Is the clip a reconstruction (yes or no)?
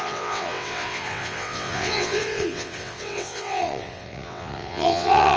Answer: yes